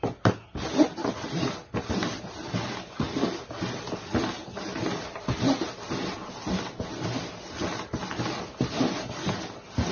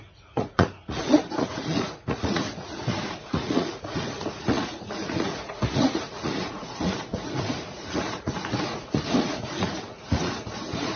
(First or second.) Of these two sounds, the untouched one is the first